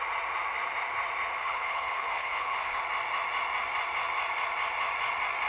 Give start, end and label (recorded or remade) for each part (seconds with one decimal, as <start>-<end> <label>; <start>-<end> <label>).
0.0-1.4 recorded; 1.4-2.8 remade; 2.8-5.5 recorded